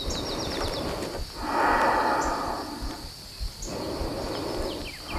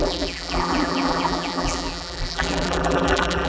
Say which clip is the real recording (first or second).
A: first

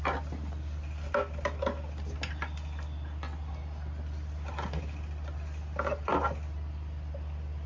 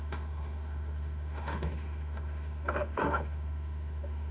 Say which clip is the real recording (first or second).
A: first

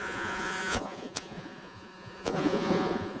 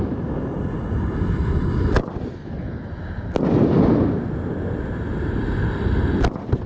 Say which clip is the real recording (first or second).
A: second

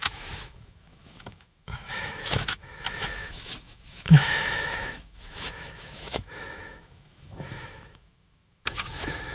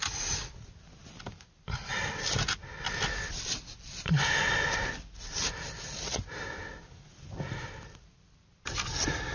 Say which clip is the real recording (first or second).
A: second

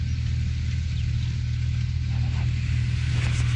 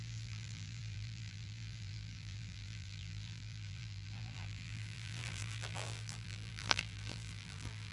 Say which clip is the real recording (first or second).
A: first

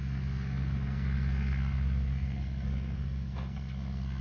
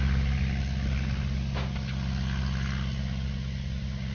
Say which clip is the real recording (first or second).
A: second